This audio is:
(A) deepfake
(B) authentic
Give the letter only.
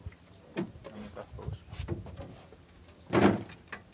B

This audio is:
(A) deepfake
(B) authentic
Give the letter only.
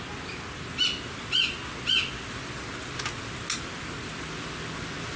B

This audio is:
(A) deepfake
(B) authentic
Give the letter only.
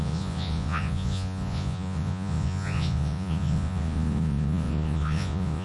A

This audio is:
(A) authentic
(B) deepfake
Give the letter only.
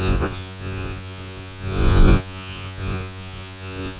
B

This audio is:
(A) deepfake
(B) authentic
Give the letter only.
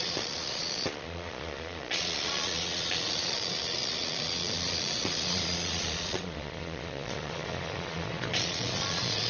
A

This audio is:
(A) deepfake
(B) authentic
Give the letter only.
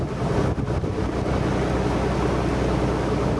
B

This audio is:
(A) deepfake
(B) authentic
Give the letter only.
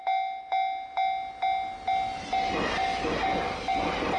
B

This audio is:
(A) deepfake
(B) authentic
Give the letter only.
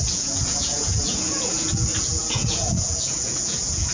A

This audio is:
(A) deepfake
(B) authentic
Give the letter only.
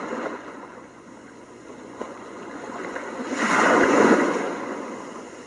A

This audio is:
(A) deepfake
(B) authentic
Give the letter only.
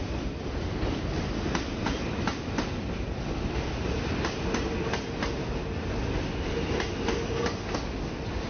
B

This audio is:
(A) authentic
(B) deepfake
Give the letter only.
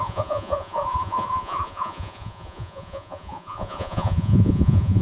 B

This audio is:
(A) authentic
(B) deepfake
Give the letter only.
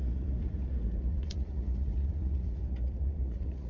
B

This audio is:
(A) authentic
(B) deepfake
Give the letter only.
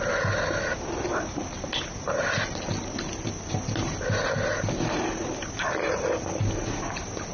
A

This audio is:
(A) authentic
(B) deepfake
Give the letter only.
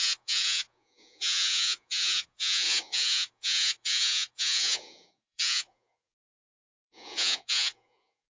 B